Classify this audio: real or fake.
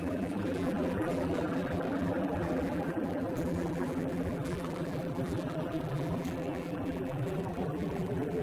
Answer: fake